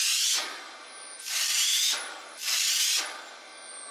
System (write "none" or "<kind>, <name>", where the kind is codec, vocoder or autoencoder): none